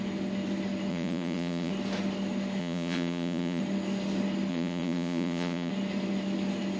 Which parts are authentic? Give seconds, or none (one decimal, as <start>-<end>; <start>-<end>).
0.0-0.9; 1.7-2.6; 3.6-4.5; 5.7-6.8